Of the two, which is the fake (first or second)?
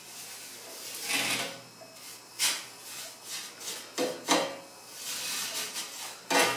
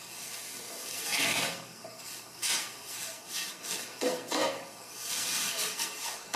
second